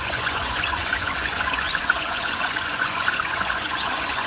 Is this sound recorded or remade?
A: remade